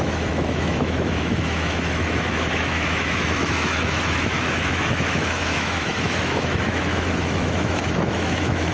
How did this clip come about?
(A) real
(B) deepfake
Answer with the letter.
B